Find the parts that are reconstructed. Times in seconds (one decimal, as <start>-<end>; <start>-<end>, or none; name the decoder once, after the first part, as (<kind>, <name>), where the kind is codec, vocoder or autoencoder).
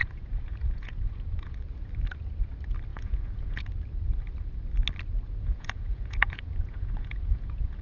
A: 0.0-1.6 (vocoder, Vocos); 2.9-3.6; 5.4-7.8